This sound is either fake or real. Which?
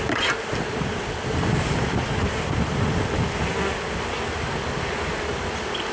fake